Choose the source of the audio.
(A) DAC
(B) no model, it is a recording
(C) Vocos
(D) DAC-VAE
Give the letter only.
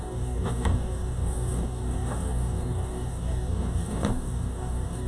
A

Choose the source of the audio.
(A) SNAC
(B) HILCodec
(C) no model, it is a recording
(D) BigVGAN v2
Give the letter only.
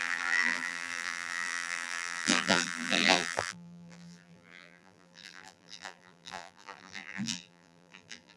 D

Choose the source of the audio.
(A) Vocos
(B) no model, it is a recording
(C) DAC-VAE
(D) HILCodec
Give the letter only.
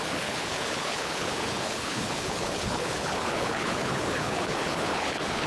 D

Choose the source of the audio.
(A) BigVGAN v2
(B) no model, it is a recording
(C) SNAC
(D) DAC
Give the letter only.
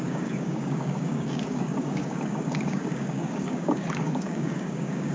D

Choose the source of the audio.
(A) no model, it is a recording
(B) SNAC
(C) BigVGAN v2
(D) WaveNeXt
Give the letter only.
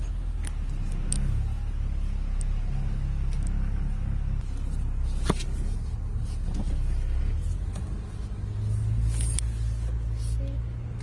A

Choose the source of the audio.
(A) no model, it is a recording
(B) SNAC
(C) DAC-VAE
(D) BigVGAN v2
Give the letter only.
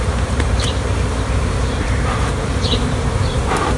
D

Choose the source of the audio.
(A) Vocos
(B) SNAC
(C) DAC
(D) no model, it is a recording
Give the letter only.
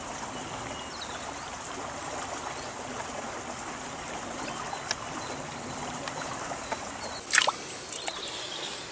D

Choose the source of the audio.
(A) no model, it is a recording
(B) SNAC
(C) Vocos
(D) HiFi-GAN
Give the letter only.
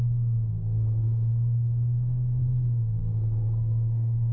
B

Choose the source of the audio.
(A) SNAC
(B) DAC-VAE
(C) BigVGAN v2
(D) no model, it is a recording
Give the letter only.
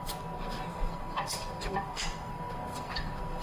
A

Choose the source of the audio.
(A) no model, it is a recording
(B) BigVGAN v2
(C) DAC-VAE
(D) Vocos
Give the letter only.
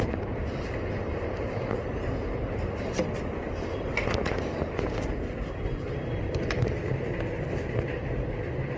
B